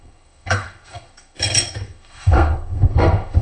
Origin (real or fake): fake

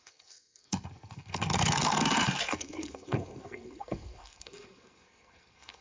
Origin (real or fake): fake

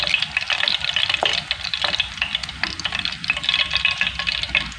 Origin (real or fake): real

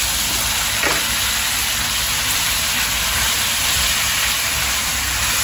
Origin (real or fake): real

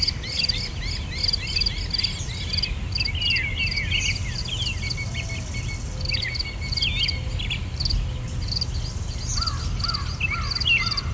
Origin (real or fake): real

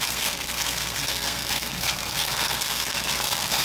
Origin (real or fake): fake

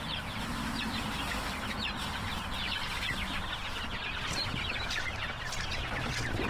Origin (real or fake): real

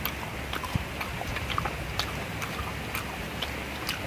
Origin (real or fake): real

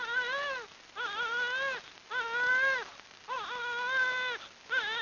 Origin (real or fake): real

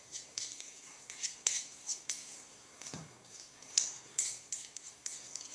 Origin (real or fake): fake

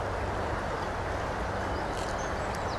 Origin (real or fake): real